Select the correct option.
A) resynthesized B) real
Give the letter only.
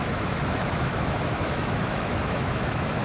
A